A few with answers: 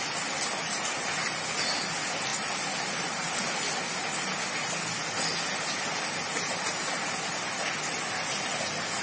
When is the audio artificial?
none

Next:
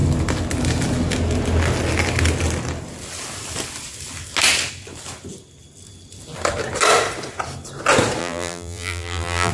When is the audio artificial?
8.2-9.5 (vocoder, BigVGAN v2)

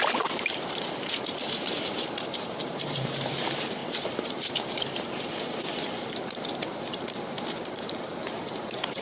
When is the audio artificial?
1.9-9.0 (vocoder, BigVGAN v2)

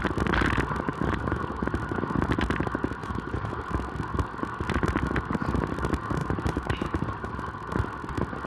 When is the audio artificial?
0.9-1.4 (vocoder, BigVGAN v2); 3.0-3.6; 6.2-7.3

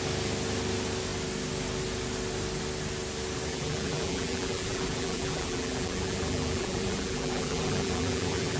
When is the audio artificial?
3.5-8.6 (vocoder, BigVGAN v2)

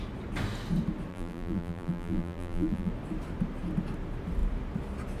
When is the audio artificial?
1.1-2.9 (vocoder, BigVGAN v2)

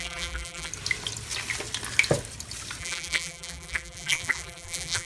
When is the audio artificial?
0.0-0.7 (vocoder, BigVGAN v2); 2.8-5.1

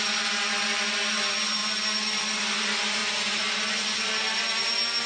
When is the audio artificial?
none